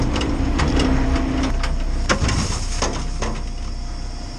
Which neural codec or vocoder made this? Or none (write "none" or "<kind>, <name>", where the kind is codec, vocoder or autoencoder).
none